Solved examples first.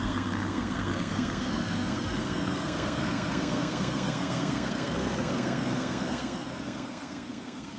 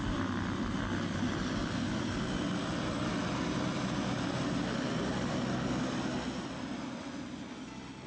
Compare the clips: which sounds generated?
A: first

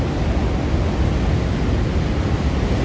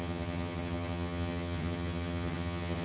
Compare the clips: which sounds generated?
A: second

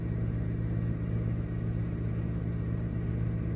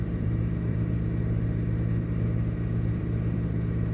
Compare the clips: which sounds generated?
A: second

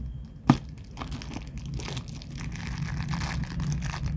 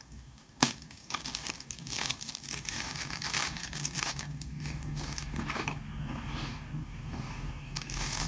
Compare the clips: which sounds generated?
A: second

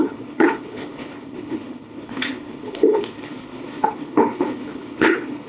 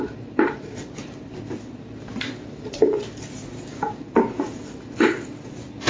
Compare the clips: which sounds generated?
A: first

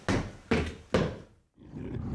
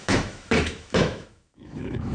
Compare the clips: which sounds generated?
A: second